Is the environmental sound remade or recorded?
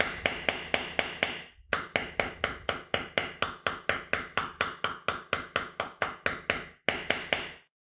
recorded